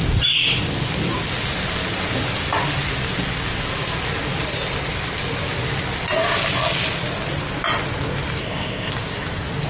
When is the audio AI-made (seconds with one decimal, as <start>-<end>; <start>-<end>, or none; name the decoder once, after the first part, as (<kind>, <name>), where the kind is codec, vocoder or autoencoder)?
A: 8.4-8.9 (codec, ZipCodec)